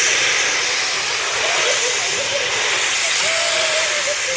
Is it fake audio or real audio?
real